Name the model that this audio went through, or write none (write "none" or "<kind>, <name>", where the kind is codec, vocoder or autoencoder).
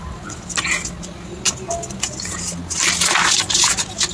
none